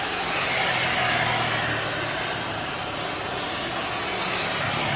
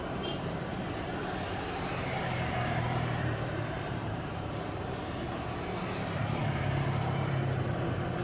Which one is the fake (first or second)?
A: second